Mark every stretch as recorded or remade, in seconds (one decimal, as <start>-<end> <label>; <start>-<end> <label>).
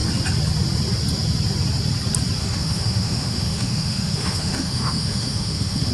0.0-2.4 recorded; 2.4-5.9 remade